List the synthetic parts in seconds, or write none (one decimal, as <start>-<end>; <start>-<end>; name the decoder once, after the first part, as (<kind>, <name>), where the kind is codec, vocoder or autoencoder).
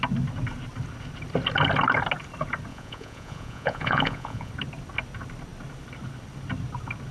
2.7-4.5 (vocoder, Vocos)